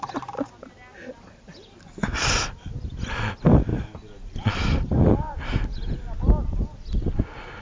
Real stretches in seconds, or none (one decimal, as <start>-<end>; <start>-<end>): 0.0-7.6